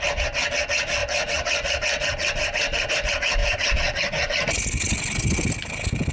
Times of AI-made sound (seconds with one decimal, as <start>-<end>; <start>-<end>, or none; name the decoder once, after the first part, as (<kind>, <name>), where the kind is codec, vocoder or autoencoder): none